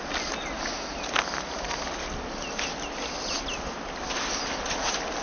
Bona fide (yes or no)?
yes